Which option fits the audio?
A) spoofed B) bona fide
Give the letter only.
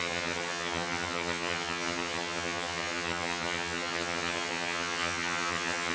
A